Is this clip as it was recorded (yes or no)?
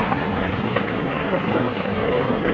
no